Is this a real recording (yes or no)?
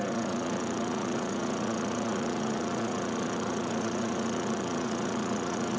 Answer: no